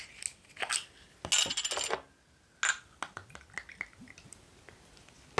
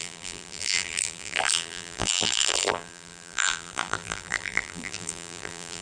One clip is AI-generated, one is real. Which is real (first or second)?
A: first